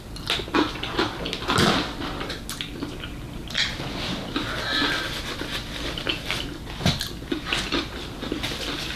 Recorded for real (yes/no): yes